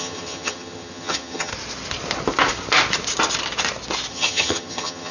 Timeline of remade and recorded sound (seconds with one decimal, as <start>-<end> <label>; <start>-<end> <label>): 0.0-1.5 remade; 1.5-4.1 recorded; 4.1-5.1 remade